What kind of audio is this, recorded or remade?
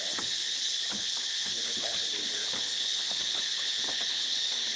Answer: remade